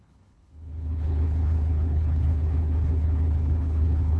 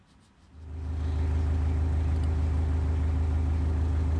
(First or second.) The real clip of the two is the second